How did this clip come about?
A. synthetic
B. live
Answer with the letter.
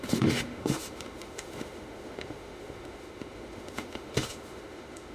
A